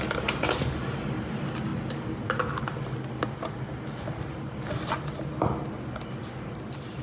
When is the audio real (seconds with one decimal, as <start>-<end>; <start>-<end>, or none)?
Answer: 0.0-7.0